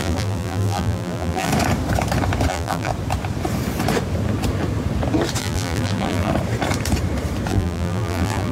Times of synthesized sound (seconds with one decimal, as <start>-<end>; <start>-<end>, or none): 0.0-1.5; 2.5-2.9; 5.4-6.3; 7.5-8.5